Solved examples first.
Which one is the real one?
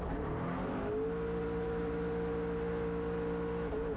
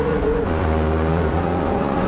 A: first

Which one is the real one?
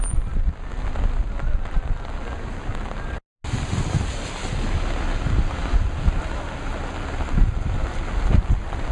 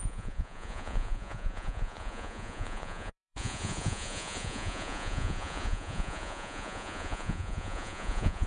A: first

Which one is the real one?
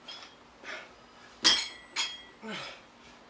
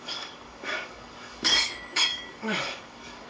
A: first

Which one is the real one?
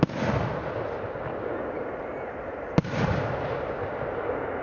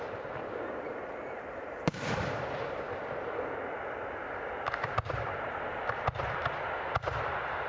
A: first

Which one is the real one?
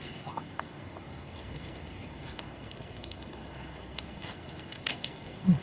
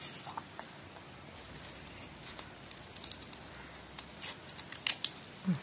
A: second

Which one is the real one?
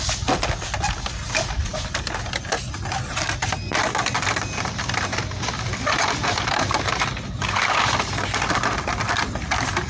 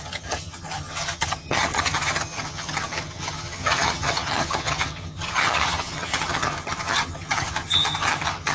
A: first